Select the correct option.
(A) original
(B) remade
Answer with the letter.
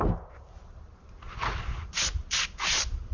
A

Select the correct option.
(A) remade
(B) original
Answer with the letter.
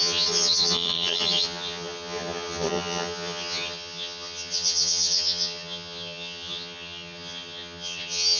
A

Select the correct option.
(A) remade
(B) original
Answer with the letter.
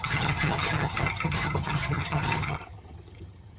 A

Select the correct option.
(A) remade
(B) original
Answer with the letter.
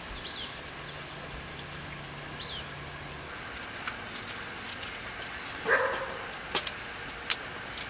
B